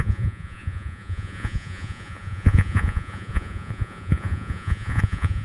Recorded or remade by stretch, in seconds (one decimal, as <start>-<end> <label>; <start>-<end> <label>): 0.0-5.4 remade